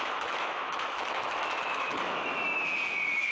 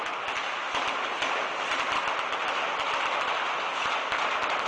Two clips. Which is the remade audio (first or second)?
first